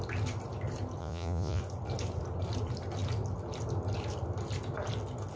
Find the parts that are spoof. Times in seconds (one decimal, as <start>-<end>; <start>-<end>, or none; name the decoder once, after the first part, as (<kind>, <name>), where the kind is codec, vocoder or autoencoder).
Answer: 1.0-1.6 (vocoder, Vocos)